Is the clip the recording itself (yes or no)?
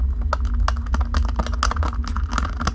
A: yes